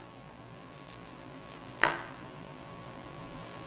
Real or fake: fake